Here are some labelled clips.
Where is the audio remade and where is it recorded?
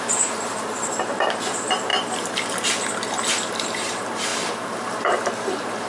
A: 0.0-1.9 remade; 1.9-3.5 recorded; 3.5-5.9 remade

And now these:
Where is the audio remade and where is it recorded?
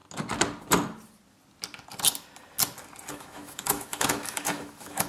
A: 0.0-3.1 recorded; 3.1-5.1 remade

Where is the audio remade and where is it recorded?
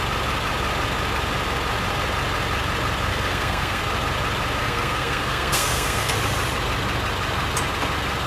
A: 0.0-3.1 recorded; 3.1-3.8 remade; 3.8-4.6 recorded; 4.6-6.1 remade; 6.1-8.3 recorded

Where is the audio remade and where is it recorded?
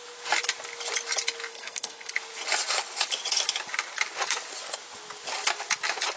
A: 0.0-1.5 recorded; 1.5-2.1 remade; 2.1-6.2 recorded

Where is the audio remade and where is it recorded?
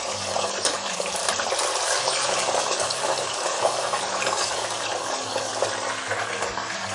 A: 0.0-1.2 remade; 1.2-2.0 recorded; 2.0-5.5 remade; 5.5-6.3 recorded; 6.3-6.9 remade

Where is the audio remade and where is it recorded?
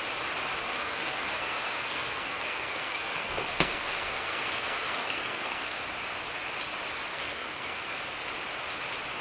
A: 0.0-0.6 recorded; 0.6-5.8 remade; 5.8-7.1 recorded; 7.1-8.0 remade; 8.0-9.2 recorded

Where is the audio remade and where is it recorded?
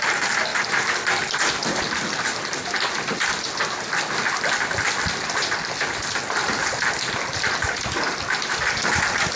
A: 0.0-2.3 recorded; 2.3-4.4 remade; 4.4-9.4 recorded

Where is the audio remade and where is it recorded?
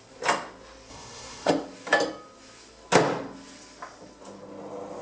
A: 0.0-0.9 recorded; 0.9-1.5 remade; 1.5-5.0 recorded